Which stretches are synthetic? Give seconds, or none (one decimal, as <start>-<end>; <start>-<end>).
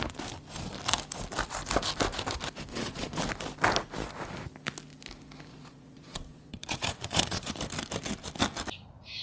2.7-3.2; 5.5-7.5